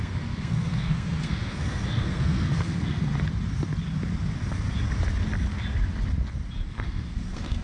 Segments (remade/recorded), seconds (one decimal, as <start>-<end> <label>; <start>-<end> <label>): 0.0-3.1 remade; 3.1-6.7 recorded; 6.7-7.6 remade